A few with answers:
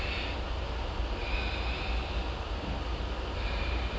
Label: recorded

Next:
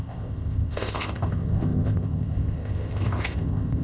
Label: remade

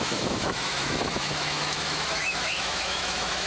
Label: remade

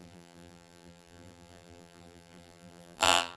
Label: remade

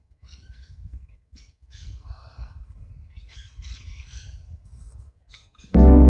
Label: remade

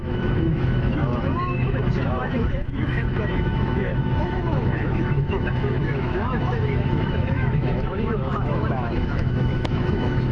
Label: remade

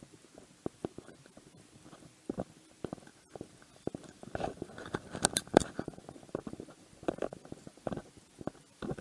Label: recorded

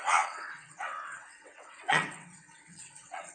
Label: remade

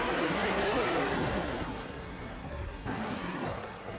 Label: remade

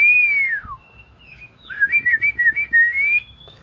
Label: remade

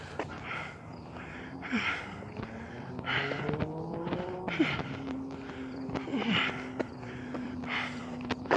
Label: remade